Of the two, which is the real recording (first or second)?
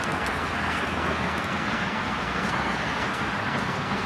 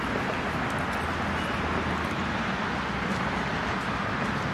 second